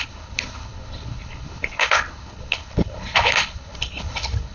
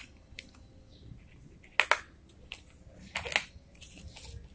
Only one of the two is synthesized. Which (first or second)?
first